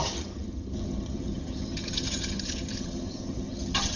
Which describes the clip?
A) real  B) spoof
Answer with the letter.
B